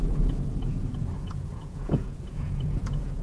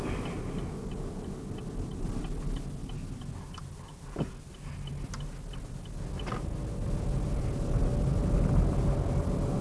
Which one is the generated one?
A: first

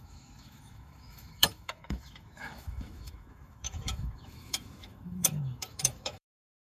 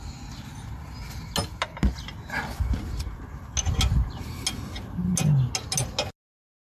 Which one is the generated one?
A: first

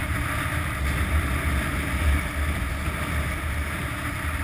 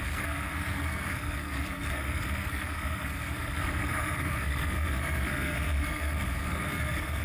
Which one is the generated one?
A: second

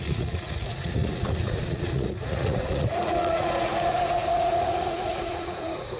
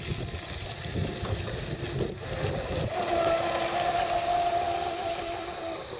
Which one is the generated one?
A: first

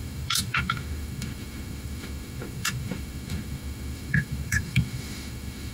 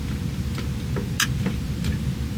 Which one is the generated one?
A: first